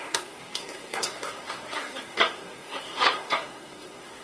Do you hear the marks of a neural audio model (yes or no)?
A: yes